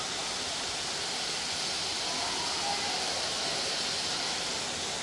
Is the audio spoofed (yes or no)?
no